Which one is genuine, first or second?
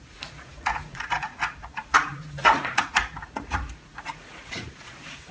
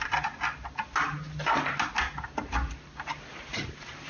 second